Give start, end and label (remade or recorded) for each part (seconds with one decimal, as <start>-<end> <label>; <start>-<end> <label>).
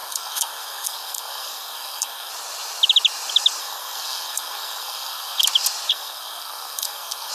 0.0-2.3 remade; 2.3-3.6 recorded; 3.6-5.4 remade; 5.4-5.9 recorded; 5.9-7.3 remade